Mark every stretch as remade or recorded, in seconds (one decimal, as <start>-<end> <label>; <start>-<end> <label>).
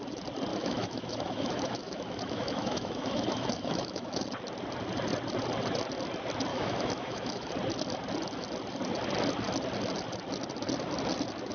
0.0-0.5 recorded; 0.5-4.2 remade; 4.2-6.5 recorded; 6.5-7.5 remade; 7.5-11.5 recorded